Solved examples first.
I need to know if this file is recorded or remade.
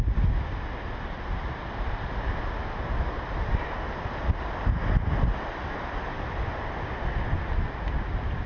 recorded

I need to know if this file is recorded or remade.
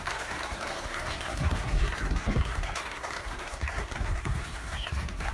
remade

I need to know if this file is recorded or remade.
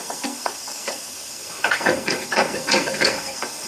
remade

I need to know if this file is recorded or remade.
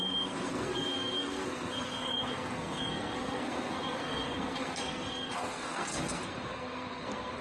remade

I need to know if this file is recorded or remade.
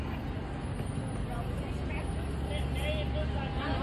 recorded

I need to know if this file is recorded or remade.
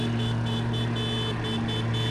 recorded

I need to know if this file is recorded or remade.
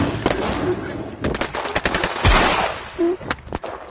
recorded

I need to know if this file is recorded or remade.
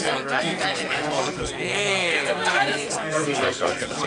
remade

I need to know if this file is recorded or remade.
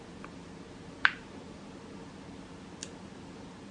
recorded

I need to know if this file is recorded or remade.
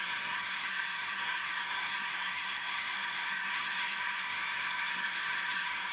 remade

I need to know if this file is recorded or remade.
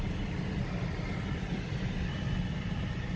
recorded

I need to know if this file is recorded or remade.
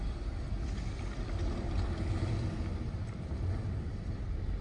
recorded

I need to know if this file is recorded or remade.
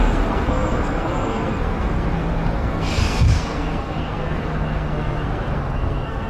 remade